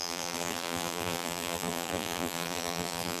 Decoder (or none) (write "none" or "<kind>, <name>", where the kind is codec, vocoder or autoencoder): vocoder, BigVGAN v2